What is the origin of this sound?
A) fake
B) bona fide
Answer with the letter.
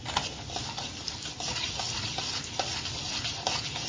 B